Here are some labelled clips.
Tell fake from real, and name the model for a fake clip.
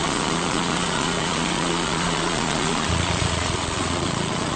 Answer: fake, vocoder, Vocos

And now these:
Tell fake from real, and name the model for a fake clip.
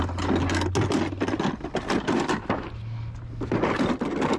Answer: real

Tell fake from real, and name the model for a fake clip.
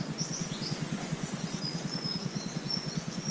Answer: fake, vocoder, Vocos